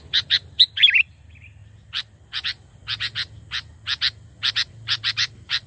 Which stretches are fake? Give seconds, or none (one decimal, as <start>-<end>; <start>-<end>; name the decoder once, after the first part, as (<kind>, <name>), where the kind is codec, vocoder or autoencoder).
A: 0.0-2.8 (vocoder, BigVGAN v2); 4.7-5.7